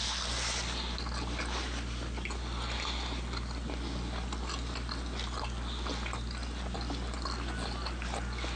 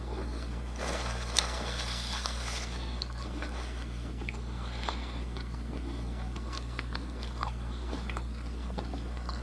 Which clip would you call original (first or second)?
first